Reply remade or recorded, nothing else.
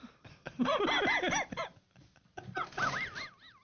recorded